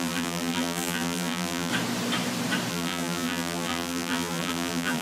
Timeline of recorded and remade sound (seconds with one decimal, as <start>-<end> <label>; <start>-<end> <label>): 0.0-1.7 remade; 1.7-2.7 recorded; 2.7-5.0 remade